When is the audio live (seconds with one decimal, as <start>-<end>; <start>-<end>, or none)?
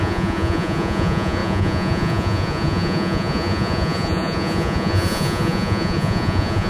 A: none